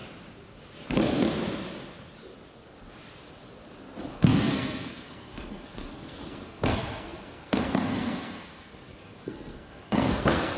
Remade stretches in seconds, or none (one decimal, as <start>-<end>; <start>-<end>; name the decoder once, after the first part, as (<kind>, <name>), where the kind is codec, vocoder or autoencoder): 4.1-10.6 (codec, SNAC)